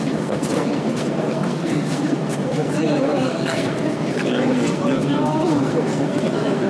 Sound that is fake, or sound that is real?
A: fake